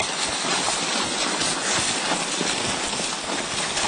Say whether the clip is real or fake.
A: real